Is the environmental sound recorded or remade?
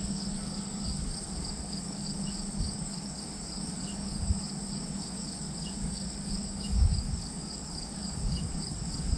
remade